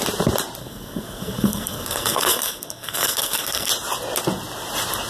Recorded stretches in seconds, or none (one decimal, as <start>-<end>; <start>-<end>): 0.0-0.6; 3.7-5.1